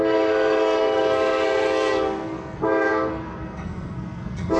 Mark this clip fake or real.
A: fake